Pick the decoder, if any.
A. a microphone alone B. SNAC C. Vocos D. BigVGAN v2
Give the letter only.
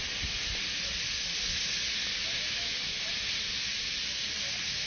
A